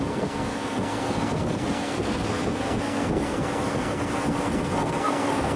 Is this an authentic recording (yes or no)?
no